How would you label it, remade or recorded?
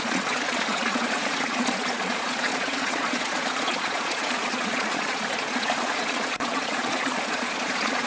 remade